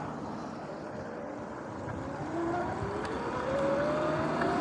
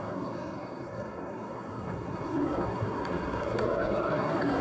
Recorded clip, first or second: first